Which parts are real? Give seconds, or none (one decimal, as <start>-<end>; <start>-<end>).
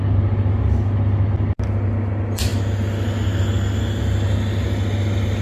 0.0-5.4